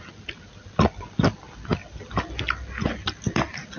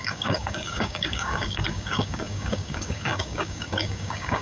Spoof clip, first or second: second